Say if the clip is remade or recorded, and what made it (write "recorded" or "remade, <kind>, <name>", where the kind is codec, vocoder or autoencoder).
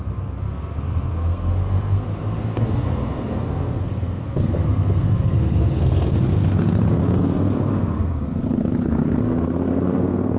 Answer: remade, codec, SNAC